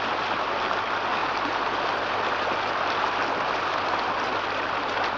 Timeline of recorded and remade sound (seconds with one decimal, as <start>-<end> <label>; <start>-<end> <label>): 0.0-5.2 recorded